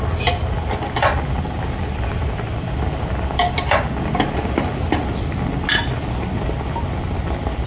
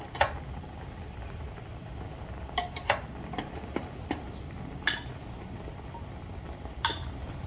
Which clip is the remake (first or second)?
second